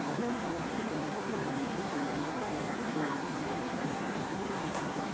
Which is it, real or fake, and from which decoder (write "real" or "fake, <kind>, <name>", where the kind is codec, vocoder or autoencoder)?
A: fake, codec, SNAC